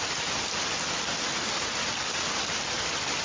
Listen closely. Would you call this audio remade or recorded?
recorded